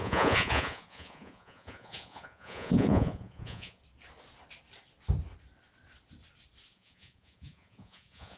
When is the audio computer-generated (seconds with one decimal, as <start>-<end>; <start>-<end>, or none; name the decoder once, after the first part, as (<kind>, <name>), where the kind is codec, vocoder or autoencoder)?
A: 0.0-3.8 (vocoder, Vocos); 6.7-8.4